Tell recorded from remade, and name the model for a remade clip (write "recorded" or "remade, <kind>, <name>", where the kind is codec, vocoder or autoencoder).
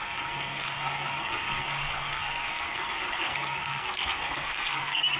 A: remade, codec, SNAC